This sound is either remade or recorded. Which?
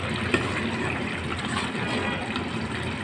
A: recorded